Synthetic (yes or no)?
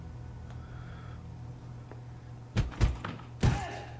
no